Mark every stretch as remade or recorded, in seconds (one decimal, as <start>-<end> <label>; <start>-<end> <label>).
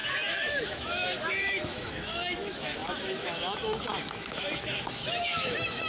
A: 0.0-5.9 remade